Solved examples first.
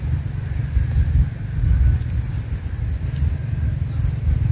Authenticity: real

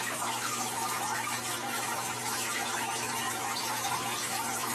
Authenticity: fake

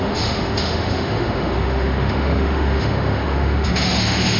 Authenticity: fake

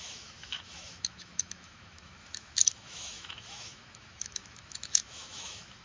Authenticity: fake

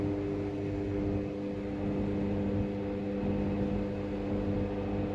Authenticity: real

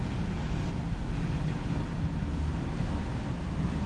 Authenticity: real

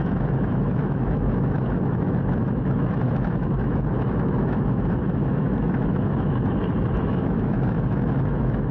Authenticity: fake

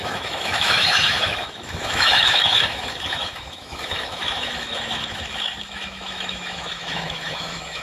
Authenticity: fake